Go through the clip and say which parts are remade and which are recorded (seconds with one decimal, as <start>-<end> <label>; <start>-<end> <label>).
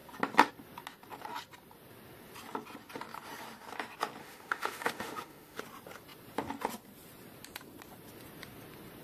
0.0-4.2 recorded; 4.2-5.6 remade; 5.6-9.0 recorded